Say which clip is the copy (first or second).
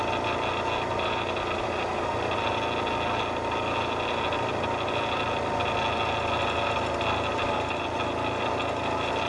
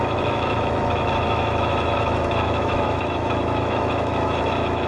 second